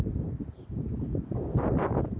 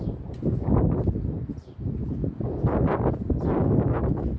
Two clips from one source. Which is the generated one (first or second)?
first